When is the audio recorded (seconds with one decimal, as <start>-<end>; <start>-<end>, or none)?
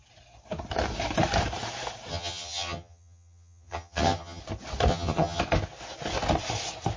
0.0-2.1; 4.4-4.9; 5.4-7.0